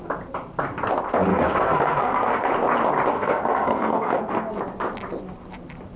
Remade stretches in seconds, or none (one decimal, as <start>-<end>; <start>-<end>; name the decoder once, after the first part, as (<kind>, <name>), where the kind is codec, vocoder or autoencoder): 1.3-2.5 (codec, SNAC); 3.1-4.5